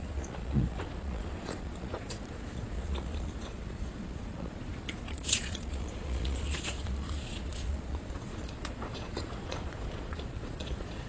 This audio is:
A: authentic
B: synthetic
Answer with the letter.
B